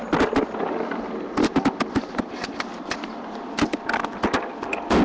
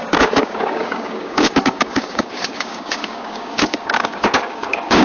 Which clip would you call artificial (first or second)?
second